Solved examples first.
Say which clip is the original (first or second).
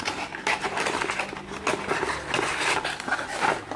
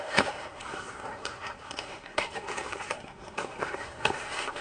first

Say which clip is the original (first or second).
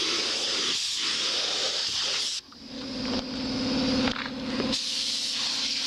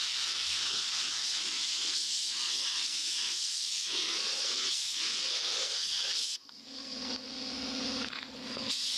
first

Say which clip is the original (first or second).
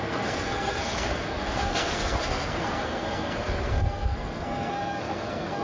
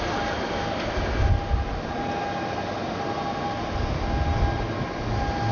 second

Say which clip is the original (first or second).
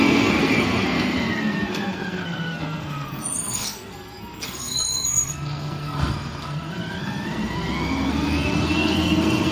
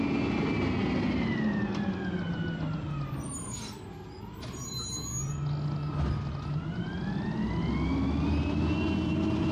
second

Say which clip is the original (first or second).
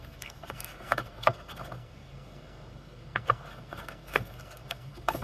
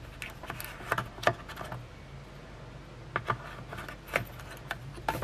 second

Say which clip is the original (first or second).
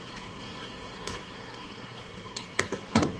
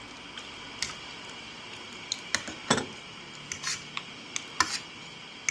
second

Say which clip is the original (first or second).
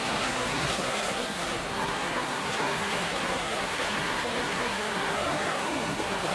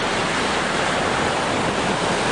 second